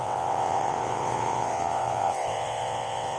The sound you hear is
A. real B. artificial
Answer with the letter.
B